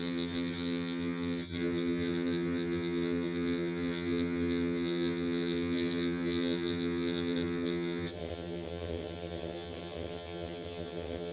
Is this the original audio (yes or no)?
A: no